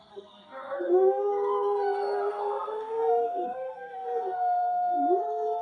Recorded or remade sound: remade